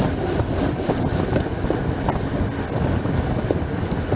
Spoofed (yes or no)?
yes